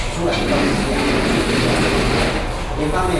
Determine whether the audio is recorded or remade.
recorded